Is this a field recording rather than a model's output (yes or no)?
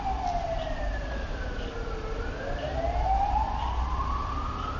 yes